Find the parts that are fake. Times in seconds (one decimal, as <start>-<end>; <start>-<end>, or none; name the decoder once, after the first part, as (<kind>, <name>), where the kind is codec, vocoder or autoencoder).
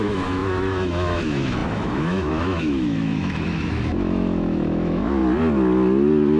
0.0-5.2 (autoencoder, DAC-VAE)